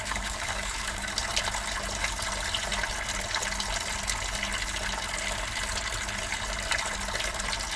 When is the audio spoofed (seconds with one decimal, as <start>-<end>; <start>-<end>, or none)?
0.0-1.1